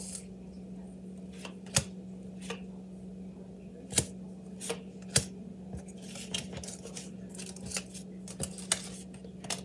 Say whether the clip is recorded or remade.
recorded